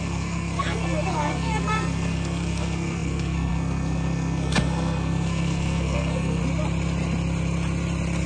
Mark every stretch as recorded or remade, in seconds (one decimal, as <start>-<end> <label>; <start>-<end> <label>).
0.0-6.4 remade; 6.4-8.3 recorded